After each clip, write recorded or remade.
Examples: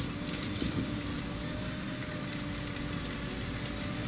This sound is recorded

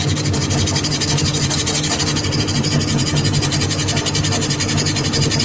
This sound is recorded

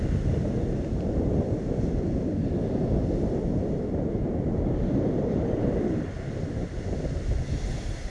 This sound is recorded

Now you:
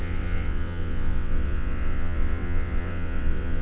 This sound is remade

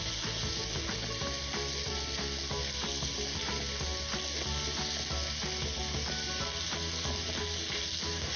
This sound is recorded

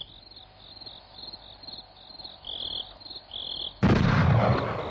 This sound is recorded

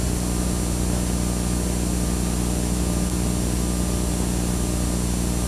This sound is recorded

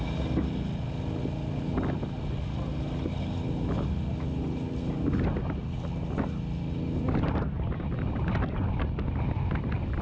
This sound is recorded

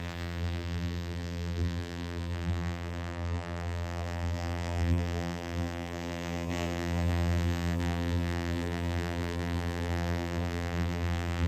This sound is remade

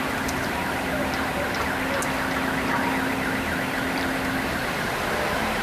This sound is recorded